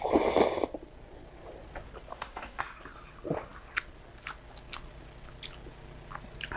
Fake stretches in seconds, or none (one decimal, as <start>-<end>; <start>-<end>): 2.1-2.6